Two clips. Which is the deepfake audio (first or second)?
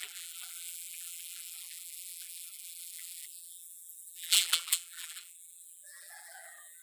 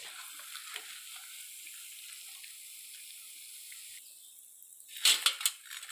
first